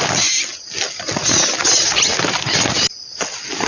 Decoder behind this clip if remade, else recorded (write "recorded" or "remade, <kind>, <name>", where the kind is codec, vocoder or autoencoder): recorded